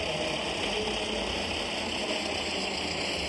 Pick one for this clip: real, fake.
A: real